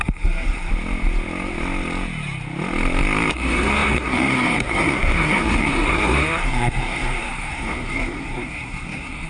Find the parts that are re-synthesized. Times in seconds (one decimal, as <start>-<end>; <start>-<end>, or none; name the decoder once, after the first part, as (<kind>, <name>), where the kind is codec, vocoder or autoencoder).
0.0-0.7 (codec, SNAC); 3.3-9.3